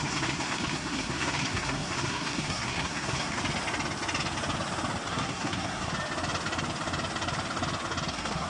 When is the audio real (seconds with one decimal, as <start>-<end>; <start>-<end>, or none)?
3.4-5.1; 5.9-8.1